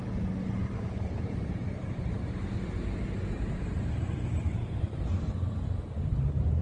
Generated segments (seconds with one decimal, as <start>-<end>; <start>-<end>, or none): 0.6-2.4; 3.4-4.7